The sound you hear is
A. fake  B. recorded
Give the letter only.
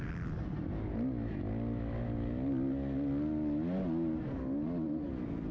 B